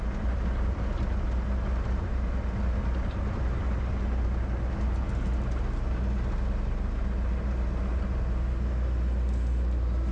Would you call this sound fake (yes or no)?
no